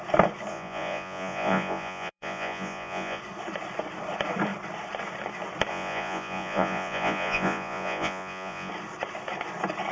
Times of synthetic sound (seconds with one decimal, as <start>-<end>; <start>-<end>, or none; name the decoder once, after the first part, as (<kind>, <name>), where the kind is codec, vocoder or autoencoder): 0.5-3.2 (vocoder, Vocos); 5.7-8.7